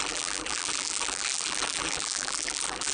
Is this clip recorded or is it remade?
remade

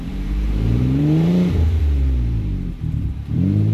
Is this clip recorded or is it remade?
remade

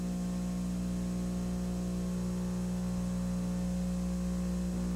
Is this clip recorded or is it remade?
recorded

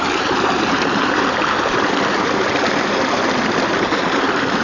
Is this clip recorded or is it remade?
recorded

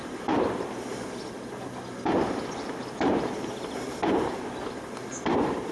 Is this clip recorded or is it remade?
recorded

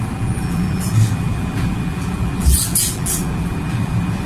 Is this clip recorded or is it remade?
remade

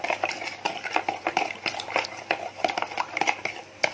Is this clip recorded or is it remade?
recorded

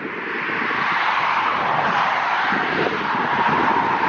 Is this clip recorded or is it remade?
remade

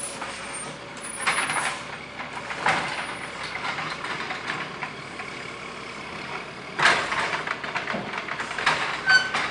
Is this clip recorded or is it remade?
recorded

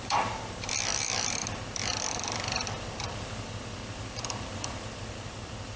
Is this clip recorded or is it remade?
remade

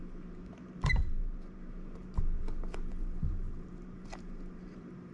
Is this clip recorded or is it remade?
remade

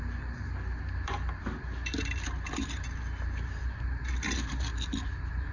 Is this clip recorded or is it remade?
recorded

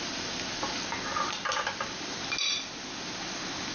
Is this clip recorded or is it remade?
recorded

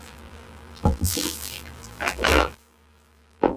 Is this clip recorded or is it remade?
remade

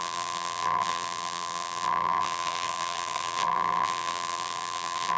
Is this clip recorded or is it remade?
remade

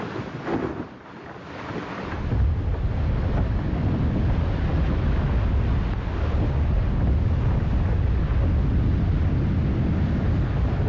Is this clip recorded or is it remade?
recorded